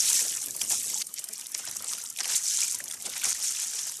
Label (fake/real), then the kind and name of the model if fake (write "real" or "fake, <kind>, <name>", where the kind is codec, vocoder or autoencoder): real